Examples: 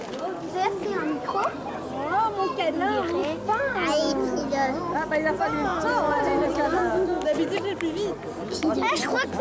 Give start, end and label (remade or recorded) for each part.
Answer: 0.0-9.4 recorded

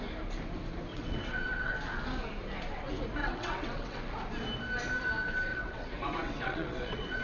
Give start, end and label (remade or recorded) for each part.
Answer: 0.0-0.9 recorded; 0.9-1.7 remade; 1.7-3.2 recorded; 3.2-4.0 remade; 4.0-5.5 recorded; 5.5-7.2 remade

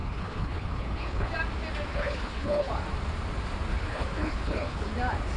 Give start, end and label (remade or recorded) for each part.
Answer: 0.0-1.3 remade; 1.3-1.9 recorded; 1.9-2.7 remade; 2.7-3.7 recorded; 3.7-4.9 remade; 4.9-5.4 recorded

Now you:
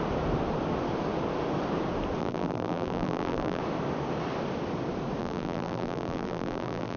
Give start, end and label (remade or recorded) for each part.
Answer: 0.0-2.2 recorded; 2.2-3.6 remade; 3.6-5.2 recorded; 5.2-7.0 remade

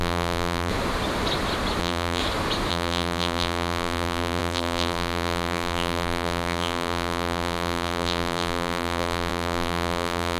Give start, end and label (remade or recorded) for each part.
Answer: 0.0-0.7 remade; 0.7-1.8 recorded; 1.8-2.2 remade; 2.2-2.7 recorded; 2.7-10.4 remade